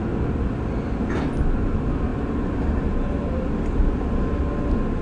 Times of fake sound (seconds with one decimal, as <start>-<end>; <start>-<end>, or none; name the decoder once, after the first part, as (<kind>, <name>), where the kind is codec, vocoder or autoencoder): none